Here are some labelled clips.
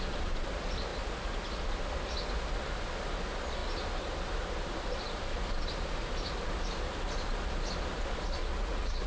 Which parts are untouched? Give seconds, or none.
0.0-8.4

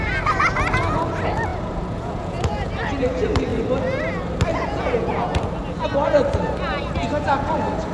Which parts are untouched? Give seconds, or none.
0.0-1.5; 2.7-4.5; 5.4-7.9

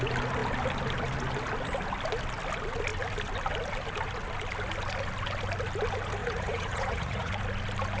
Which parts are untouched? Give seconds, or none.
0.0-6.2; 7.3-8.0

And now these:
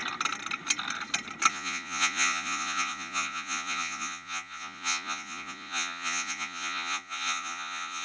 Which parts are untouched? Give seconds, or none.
0.0-1.5

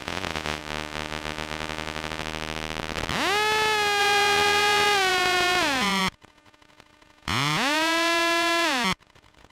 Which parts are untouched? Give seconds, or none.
0.6-4.0